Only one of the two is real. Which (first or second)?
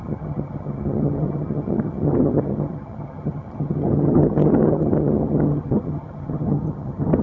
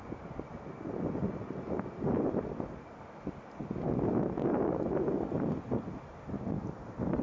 second